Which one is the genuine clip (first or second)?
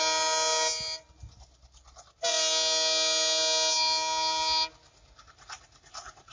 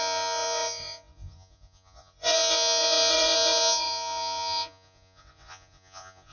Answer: first